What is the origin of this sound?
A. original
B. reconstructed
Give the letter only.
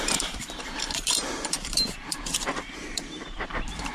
B